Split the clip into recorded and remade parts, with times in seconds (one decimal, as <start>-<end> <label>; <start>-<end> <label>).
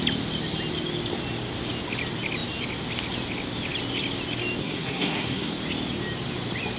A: 0.0-4.6 recorded; 4.6-5.5 remade; 5.5-6.8 recorded